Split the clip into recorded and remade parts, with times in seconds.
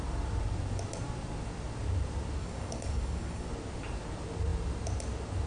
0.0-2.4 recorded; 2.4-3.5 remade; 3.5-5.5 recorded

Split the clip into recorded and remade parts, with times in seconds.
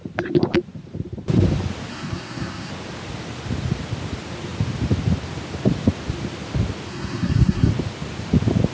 0.0-1.9 recorded; 1.9-2.7 remade; 2.7-6.9 recorded; 6.9-7.7 remade; 7.7-8.7 recorded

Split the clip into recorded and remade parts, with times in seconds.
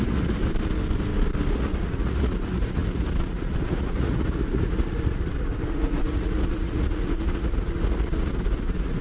0.0-0.4 remade; 0.4-1.5 recorded; 1.5-9.0 remade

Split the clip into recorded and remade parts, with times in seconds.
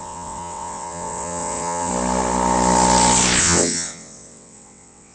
0.0-1.9 remade; 1.9-3.4 recorded; 3.4-5.1 remade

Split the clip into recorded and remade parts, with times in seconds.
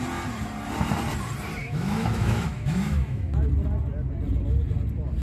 0.0-1.6 recorded; 1.6-3.5 remade; 3.5-5.2 recorded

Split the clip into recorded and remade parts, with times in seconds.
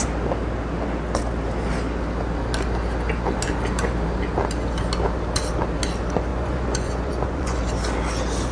0.0-6.3 recorded; 6.3-7.6 remade; 7.6-8.5 recorded